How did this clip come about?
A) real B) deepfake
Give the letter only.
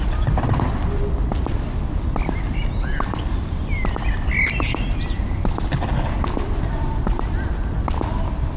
A